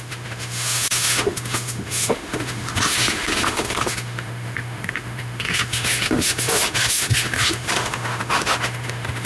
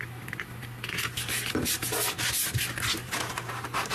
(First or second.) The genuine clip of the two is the second